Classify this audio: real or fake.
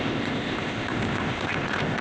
fake